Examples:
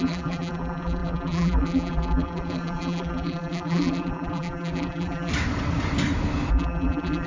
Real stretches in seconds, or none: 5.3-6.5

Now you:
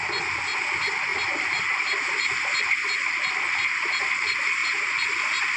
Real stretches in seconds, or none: 0.0-1.1; 2.1-4.6